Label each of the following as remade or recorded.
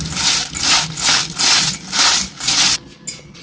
recorded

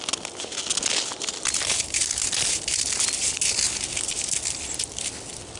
recorded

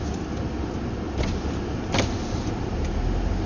recorded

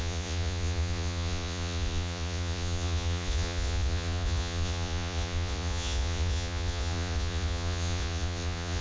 remade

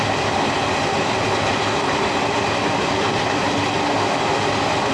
recorded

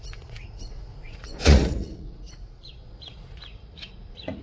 remade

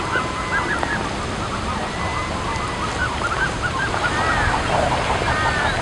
recorded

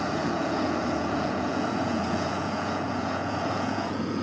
remade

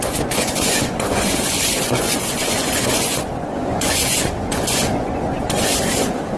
remade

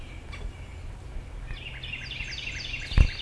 recorded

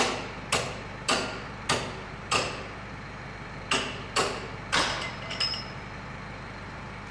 recorded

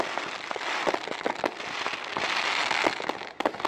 recorded